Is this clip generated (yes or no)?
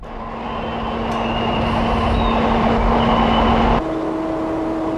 no